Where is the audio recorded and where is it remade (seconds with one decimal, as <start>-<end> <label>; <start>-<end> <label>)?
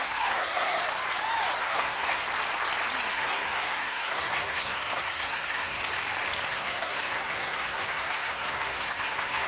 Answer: 0.0-0.8 remade; 0.8-1.6 recorded; 1.6-2.2 remade; 2.2-3.1 recorded; 3.1-5.8 remade; 5.8-6.5 recorded; 6.5-9.5 remade